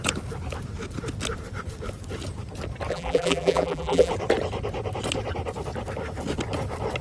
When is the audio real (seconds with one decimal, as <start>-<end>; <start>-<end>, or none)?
0.0-2.9; 4.1-7.0